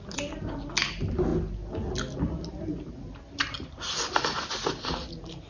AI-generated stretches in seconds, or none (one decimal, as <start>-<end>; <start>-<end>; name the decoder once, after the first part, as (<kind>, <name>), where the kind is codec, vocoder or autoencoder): none